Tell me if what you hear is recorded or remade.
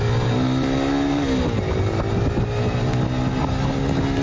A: recorded